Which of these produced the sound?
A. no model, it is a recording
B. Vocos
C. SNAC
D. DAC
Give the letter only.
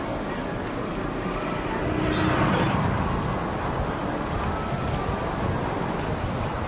A